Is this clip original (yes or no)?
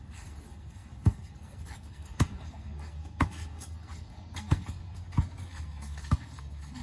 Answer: no